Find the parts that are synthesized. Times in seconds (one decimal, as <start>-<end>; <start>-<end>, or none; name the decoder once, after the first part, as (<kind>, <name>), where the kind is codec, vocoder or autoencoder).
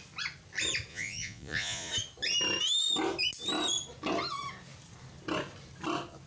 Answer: 0.9-1.9 (vocoder, Vocos)